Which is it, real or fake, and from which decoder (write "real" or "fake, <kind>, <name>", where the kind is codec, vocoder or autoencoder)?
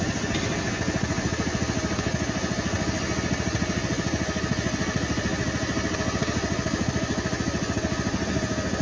real